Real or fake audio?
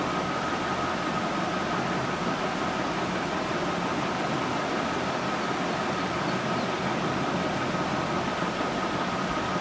real